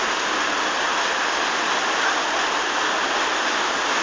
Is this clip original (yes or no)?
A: yes